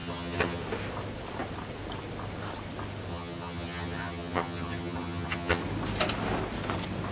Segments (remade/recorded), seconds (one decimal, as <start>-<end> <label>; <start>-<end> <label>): 0.0-0.6 remade; 0.6-3.1 recorded; 3.1-5.6 remade; 5.6-7.1 recorded